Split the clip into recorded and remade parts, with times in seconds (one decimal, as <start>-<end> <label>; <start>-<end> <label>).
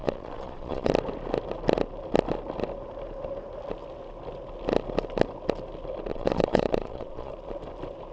0.0-0.9 remade; 0.9-6.1 recorded; 6.1-7.3 remade; 7.3-8.1 recorded